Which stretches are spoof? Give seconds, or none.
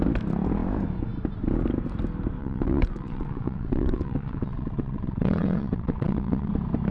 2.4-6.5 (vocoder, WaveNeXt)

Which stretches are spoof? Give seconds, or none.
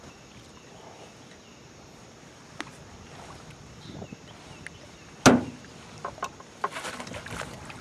none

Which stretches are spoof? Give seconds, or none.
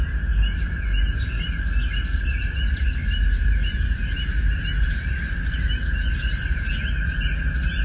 3.0-6.8 (vocoder, BigVGAN v2)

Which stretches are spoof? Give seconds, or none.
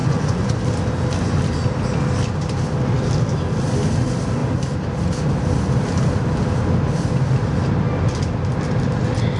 0.0-0.6 (vocoder, Vocos)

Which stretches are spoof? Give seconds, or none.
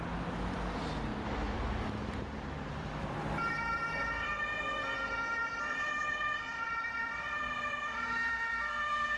1.1-4.6 (vocoder, BigVGAN v2); 5.4-8.5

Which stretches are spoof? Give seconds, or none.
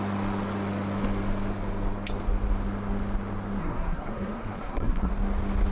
3.6-5.1 (codec, SNAC)